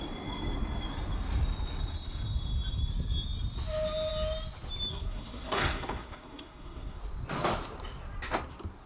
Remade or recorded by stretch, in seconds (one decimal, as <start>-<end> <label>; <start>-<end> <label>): 0.0-4.9 recorded; 4.9-7.0 remade; 7.0-8.9 recorded